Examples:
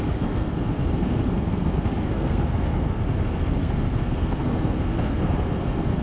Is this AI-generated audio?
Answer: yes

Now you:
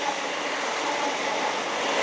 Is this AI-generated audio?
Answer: no